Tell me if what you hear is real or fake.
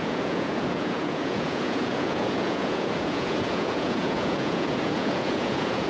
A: fake